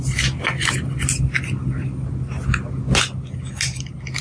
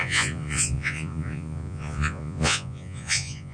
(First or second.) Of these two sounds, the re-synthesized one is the second